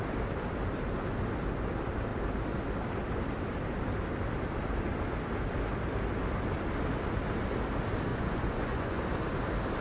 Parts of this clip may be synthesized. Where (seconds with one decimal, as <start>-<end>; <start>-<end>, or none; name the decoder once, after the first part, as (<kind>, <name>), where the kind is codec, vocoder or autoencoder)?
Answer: 8.1-9.0 (vocoder, Vocos)

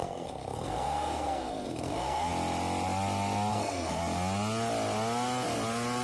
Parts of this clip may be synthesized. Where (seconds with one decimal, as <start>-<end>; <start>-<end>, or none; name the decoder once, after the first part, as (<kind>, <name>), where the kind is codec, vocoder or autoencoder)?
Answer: 0.0-2.3 (codec, SNAC); 3.5-4.0

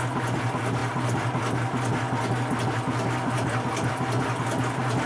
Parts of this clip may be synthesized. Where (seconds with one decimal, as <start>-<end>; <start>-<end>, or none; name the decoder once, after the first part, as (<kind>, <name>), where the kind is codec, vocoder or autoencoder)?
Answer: none

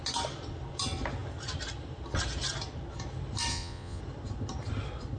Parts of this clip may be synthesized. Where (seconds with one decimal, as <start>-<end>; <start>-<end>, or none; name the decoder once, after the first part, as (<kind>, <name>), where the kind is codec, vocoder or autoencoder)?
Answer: 3.5-4.0 (vocoder, Vocos)

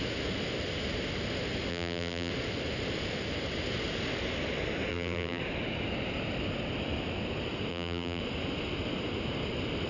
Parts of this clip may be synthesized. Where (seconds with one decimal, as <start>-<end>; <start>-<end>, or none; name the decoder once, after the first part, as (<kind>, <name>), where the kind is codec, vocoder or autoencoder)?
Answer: 1.7-2.3 (vocoder, BigVGAN v2); 4.9-5.4; 7.7-8.2

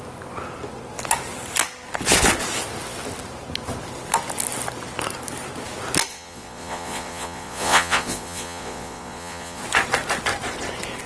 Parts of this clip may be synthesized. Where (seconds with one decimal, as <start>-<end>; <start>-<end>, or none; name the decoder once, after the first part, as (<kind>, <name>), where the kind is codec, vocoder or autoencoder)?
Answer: 6.1-9.6 (vocoder, Vocos)

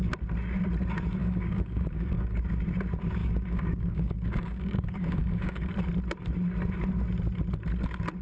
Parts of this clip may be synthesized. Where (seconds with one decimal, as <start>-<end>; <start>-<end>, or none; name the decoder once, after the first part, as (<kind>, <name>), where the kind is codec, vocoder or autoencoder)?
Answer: 1.2-2.4 (codec, DAC); 3.2-5.7